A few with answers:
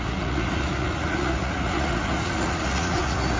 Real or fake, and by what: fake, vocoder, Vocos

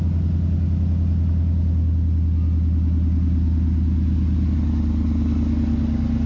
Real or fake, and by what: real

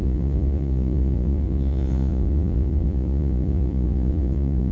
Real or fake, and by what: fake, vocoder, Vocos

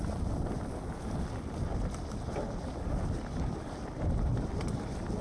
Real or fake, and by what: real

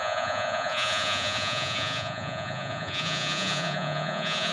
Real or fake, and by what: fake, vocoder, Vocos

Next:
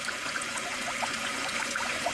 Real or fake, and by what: fake, vocoder, Vocos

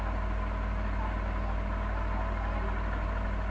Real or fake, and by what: real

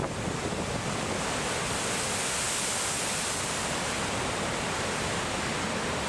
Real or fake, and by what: real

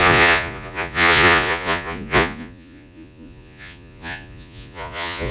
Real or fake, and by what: fake, vocoder, Vocos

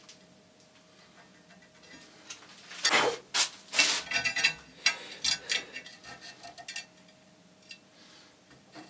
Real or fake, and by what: real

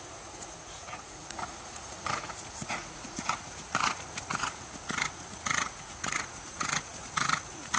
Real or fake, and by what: fake, vocoder, Vocos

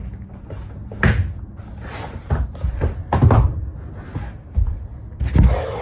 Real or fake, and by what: real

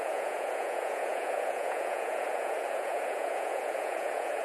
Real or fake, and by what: fake, vocoder, Vocos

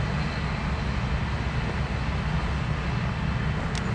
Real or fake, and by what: real